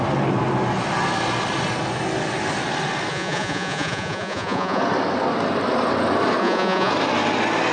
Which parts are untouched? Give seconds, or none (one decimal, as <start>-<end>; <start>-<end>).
0.0-3.1; 4.8-6.4; 6.9-7.7